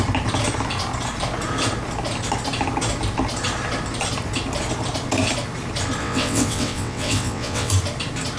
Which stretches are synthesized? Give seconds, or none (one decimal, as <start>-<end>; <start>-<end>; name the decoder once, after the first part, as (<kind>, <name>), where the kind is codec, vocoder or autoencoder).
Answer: 6.0-7.7 (vocoder, WaveNeXt)